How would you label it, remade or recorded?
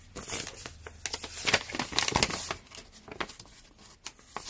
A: recorded